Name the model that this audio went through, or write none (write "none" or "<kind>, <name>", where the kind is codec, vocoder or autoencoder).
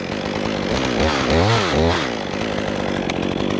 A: none